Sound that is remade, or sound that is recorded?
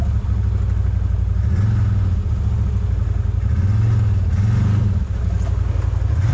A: recorded